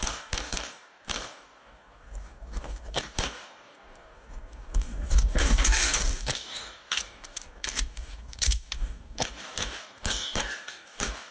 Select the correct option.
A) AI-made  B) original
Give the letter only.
A